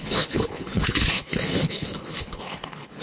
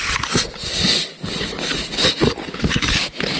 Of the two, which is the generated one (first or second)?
first